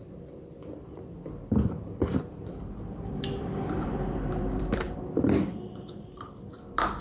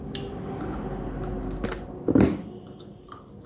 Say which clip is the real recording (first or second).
second